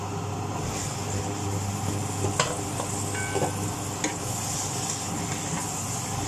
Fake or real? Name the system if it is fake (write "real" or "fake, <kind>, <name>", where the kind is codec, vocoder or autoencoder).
real